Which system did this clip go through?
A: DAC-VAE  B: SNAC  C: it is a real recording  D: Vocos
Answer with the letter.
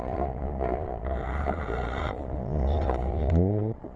D